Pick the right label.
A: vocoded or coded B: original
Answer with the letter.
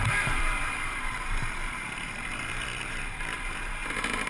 A